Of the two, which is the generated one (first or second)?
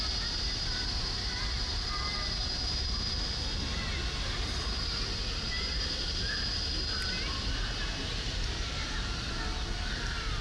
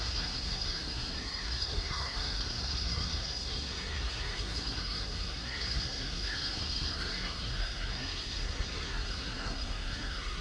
second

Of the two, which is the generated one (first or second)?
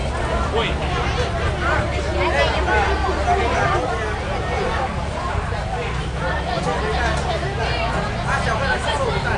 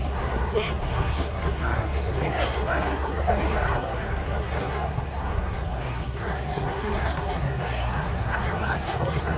second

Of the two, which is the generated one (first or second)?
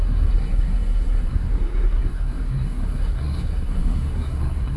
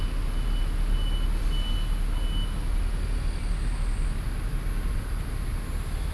first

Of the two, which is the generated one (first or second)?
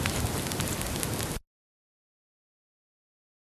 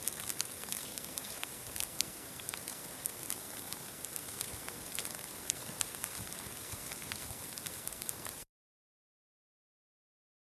second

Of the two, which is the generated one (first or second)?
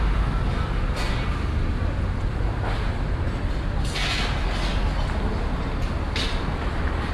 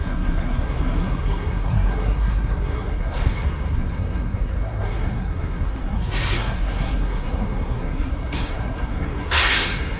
second